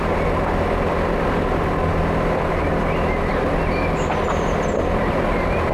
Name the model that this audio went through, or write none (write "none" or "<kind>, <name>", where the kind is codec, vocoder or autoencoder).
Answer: none